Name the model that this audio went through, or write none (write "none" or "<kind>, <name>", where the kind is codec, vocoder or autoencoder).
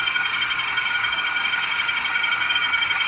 codec, DAC